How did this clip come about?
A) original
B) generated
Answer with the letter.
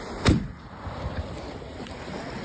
A